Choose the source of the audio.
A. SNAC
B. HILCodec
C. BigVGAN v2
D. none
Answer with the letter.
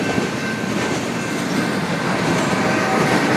C